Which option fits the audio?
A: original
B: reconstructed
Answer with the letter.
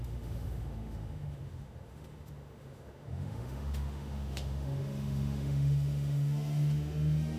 B